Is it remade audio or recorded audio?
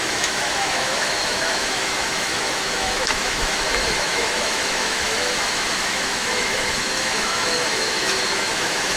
remade